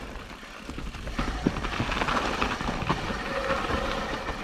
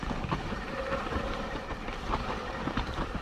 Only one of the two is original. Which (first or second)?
first